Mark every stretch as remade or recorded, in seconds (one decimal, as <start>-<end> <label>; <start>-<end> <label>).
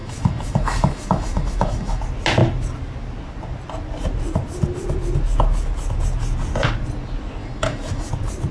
0.0-2.0 remade; 2.0-7.4 recorded; 7.4-8.1 remade; 8.1-8.5 recorded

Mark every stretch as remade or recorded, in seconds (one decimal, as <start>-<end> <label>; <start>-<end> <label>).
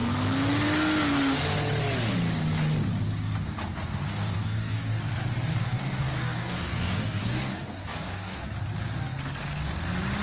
0.0-4.1 recorded; 4.1-5.0 remade; 5.0-5.5 recorded; 5.5-8.4 remade; 8.4-10.2 recorded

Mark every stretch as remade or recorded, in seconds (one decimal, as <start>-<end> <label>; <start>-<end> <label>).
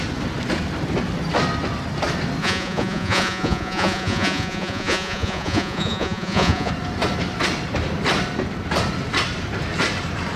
0.0-2.4 recorded; 2.4-6.7 remade; 6.7-10.4 recorded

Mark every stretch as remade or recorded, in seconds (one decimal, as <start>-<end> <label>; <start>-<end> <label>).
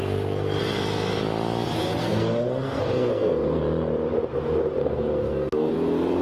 0.0-0.6 remade; 0.6-2.0 recorded; 2.0-3.6 remade; 3.6-4.8 recorded; 4.8-5.7 remade; 5.7-6.2 recorded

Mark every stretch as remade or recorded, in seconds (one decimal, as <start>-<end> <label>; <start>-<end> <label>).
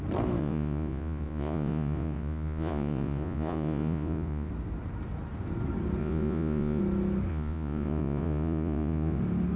0.0-0.4 recorded; 0.4-4.5 remade; 4.5-6.0 recorded; 6.0-6.8 remade; 6.8-7.3 recorded; 7.3-9.2 remade; 9.2-9.6 recorded